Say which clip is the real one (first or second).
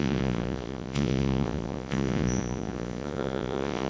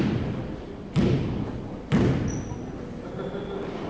second